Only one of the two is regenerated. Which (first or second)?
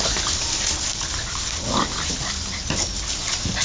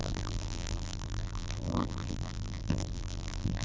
second